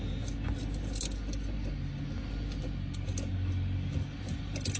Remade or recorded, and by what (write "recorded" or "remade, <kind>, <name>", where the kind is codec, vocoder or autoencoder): recorded